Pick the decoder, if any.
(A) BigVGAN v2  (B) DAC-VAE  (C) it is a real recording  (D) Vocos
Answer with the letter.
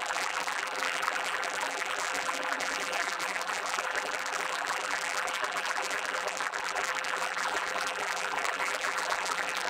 A